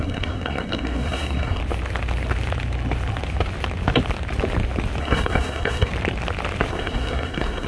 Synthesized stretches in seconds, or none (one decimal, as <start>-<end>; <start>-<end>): 0.0-1.6; 5.0-5.9; 6.7-7.7